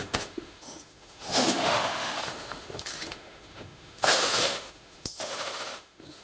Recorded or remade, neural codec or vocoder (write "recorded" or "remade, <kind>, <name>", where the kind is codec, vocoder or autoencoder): remade, autoencoder, DAC-VAE